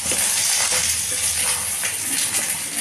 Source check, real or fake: real